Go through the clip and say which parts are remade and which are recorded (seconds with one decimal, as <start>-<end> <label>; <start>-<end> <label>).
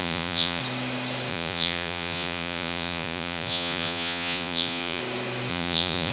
0.0-0.6 remade; 0.6-1.3 recorded; 1.3-5.0 remade; 5.0-5.5 recorded; 5.5-6.1 remade